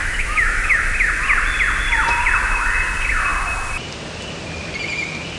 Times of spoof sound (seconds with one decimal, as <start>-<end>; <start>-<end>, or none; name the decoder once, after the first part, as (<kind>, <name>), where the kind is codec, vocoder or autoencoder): 0.0-0.8 (autoencoder, DAC-VAE)